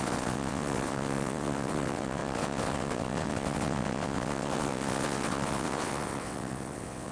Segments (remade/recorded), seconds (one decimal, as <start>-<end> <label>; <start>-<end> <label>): 0.0-7.1 remade